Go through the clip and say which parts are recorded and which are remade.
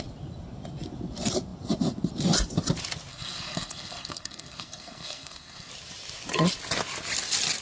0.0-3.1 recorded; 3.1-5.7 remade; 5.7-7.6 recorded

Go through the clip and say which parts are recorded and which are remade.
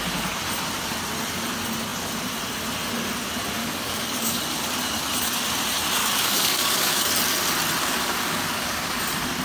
0.0-3.6 recorded; 3.6-4.4 remade; 4.4-6.0 recorded; 6.0-7.1 remade; 7.1-7.8 recorded; 7.8-9.0 remade; 9.0-9.4 recorded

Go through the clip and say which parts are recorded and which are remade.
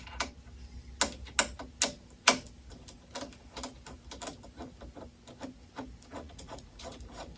0.0-6.1 recorded; 6.1-7.0 remade; 7.0-7.4 recorded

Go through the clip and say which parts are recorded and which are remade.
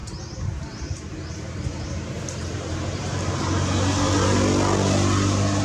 0.0-3.4 remade; 3.4-5.6 recorded